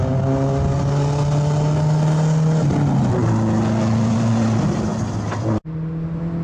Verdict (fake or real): real